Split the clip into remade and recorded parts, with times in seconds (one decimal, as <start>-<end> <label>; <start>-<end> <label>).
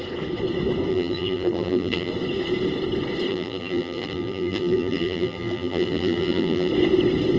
0.0-0.9 recorded; 0.9-2.1 remade; 2.1-3.3 recorded; 3.3-6.7 remade; 6.7-7.4 recorded